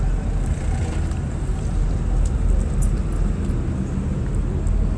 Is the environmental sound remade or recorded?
recorded